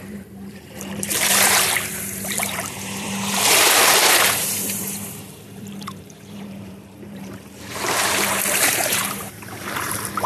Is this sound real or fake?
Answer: fake